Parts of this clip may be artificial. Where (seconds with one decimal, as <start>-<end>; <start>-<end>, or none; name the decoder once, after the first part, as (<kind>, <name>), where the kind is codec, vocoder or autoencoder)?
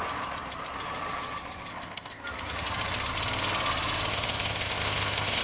1.7-2.2 (codec, ZipCodec); 4.1-5.4